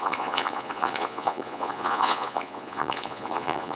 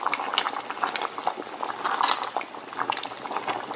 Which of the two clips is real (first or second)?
second